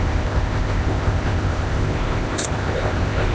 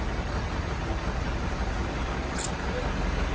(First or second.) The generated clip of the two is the first